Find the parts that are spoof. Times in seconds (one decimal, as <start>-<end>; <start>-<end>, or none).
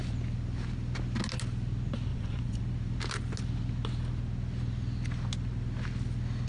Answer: 2.1-2.6